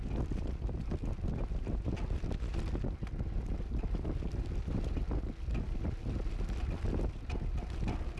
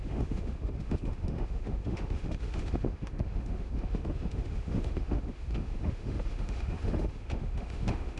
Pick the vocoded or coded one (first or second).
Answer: second